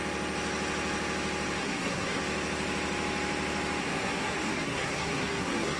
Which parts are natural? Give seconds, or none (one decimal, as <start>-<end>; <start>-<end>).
0.0-1.6; 2.2-3.8